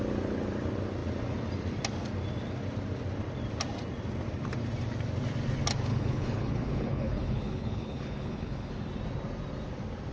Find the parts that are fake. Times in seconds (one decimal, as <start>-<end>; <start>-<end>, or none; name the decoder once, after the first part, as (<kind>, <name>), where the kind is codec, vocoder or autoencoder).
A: 5.9-8.7 (codec, HILCodec)